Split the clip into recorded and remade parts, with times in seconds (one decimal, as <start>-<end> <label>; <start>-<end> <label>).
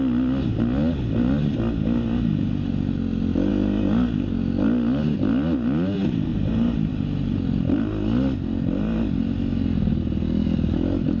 0.0-6.3 recorded; 6.3-6.9 remade; 6.9-11.2 recorded